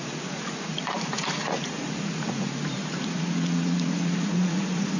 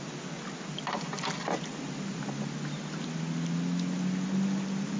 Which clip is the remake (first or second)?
first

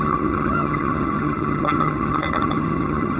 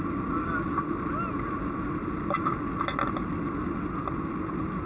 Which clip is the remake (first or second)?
first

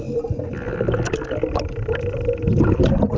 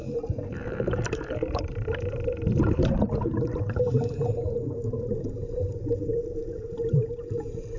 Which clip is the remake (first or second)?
second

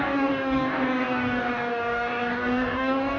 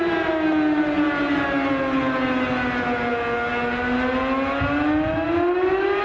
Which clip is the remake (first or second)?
first